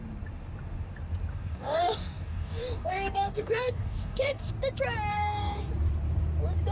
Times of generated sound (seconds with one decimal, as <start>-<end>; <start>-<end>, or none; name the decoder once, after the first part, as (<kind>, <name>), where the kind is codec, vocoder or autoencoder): 1.3-4.5 (codec, DAC); 5.1-5.7